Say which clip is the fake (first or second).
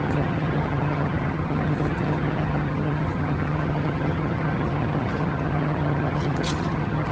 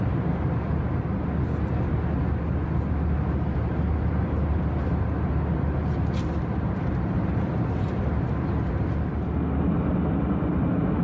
first